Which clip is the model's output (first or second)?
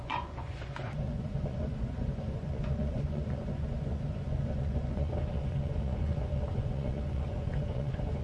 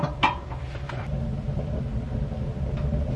first